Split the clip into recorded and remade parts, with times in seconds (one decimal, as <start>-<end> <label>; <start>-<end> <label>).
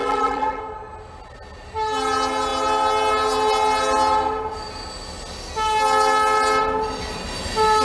0.0-0.6 remade; 0.6-7.8 recorded